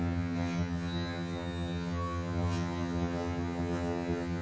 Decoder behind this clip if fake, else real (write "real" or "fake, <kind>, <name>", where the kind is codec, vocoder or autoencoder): fake, vocoder, HiFi-GAN